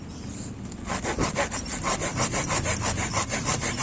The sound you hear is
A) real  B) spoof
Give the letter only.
B